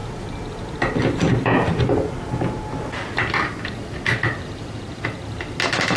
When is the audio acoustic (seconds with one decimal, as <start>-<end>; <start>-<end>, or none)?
0.0-6.0